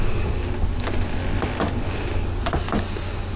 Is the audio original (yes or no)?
yes